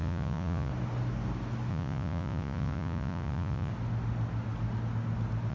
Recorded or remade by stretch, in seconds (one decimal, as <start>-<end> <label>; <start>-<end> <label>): 0.0-0.7 remade; 0.7-1.7 recorded; 1.7-3.7 remade; 3.7-5.5 recorded